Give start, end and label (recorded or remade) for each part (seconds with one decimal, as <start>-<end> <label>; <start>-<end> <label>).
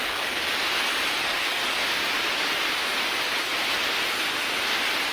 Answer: 0.0-0.6 remade; 0.6-1.2 recorded; 1.2-1.6 remade; 1.6-5.1 recorded